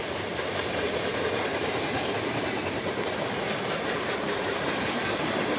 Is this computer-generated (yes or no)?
yes